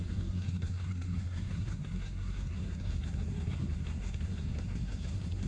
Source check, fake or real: fake